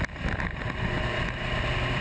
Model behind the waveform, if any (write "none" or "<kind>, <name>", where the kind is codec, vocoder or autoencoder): none